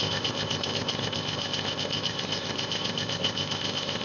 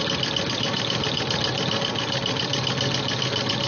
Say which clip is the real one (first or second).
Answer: second